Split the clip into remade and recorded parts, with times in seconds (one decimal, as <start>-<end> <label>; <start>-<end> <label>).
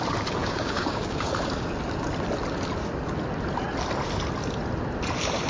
0.0-0.4 recorded; 0.4-1.3 remade; 1.3-5.5 recorded